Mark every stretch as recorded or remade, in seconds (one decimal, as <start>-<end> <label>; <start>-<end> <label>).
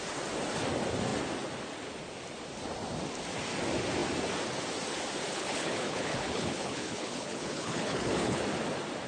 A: 0.0-5.3 recorded; 5.3-8.4 remade; 8.4-9.1 recorded